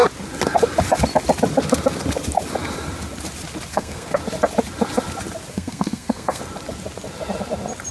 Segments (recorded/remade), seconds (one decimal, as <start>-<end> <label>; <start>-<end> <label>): 0.0-3.7 recorded; 3.7-4.2 remade; 4.2-5.5 recorded; 5.5-6.4 remade; 6.4-7.9 recorded